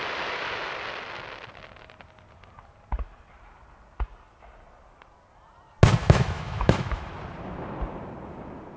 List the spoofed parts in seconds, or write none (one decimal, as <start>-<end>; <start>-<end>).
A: 6.0-7.1